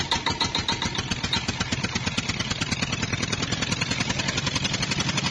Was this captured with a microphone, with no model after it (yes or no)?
yes